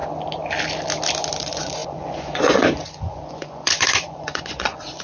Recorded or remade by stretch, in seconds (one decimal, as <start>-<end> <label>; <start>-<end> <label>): 0.0-1.4 recorded; 1.4-5.0 remade